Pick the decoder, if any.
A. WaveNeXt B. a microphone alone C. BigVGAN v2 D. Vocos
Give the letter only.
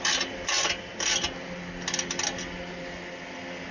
B